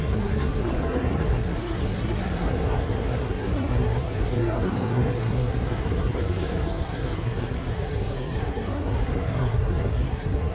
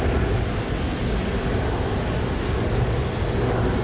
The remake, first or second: first